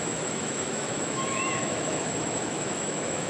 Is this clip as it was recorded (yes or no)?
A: no